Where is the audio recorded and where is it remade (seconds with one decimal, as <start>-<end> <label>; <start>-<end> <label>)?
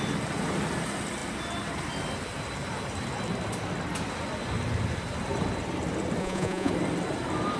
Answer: 0.0-6.2 recorded; 6.2-6.7 remade; 6.7-7.6 recorded